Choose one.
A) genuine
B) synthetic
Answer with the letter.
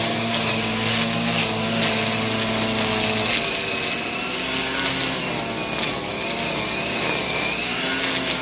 A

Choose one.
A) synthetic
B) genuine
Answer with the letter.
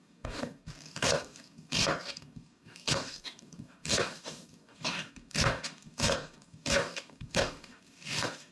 A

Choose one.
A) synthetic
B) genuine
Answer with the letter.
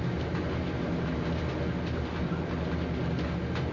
B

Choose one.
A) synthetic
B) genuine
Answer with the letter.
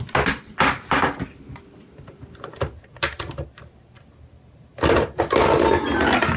B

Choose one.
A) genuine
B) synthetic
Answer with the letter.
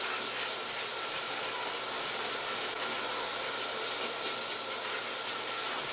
A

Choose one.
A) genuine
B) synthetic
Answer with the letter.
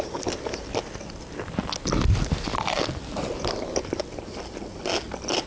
A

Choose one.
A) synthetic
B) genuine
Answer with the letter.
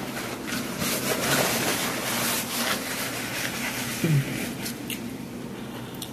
B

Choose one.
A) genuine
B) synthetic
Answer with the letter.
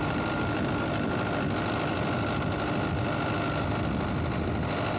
A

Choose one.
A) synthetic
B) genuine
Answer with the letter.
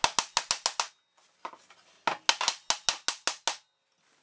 B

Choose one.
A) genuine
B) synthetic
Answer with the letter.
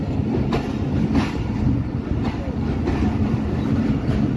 A